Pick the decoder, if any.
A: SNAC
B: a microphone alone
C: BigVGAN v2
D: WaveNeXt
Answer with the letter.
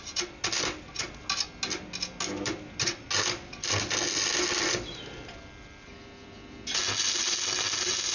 B